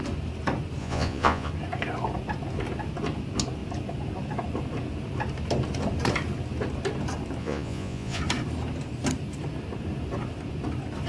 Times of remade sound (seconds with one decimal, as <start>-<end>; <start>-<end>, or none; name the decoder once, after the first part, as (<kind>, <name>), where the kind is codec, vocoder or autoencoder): 0.8-1.5 (vocoder, Vocos); 7.4-8.2